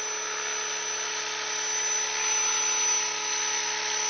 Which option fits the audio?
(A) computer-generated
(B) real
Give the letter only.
B